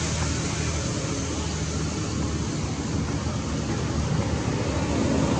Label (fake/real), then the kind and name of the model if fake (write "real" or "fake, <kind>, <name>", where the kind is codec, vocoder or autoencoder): real